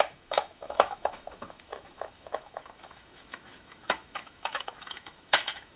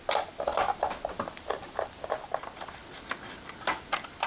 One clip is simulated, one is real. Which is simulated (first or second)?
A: first